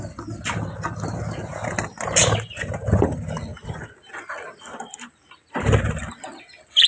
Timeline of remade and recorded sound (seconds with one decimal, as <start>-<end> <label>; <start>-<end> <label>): 0.0-6.9 recorded